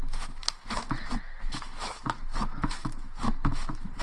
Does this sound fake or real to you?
fake